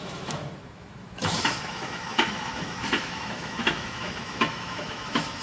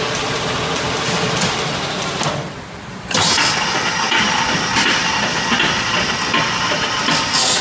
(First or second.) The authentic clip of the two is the second